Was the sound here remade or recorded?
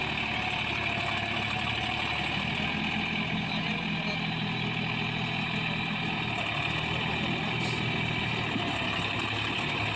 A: recorded